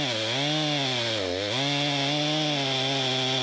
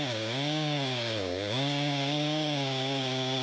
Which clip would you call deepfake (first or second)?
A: second